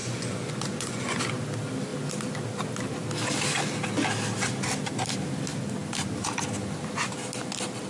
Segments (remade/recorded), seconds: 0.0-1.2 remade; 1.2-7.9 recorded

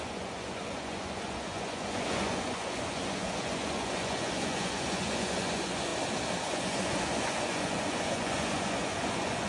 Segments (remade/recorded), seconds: 0.0-5.9 remade; 5.9-6.4 recorded; 6.4-9.5 remade

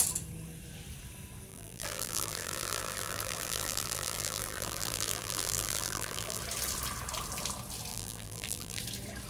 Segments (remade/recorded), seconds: 0.0-1.5 recorded; 1.5-6.4 remade; 6.4-7.9 recorded; 7.9-8.8 remade; 8.8-9.3 recorded

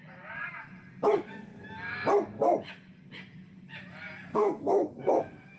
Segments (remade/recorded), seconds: 0.0-4.3 recorded; 4.3-5.6 remade

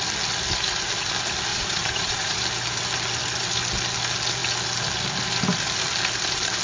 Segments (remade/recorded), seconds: 0.0-1.5 recorded; 1.5-2.4 remade; 2.4-6.6 recorded

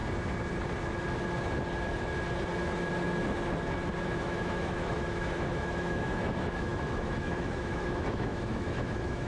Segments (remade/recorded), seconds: 0.0-4.1 recorded; 4.1-9.3 remade

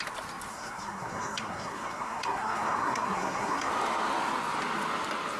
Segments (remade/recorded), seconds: 0.0-0.5 recorded; 0.5-3.7 remade; 3.7-5.4 recorded